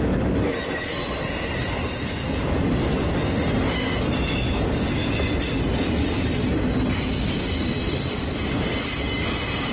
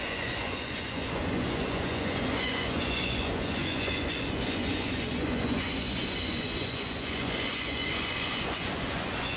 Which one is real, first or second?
first